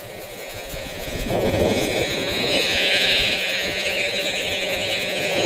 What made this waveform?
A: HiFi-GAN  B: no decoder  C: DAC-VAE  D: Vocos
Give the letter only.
D